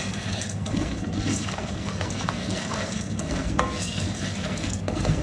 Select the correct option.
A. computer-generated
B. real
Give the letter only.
A